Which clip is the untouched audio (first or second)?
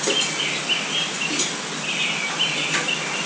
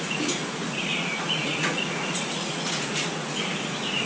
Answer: first